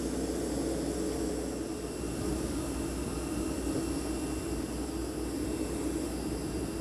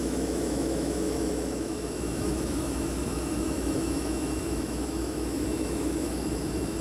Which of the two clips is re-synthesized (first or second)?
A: second